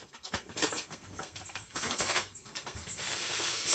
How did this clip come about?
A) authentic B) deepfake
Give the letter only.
B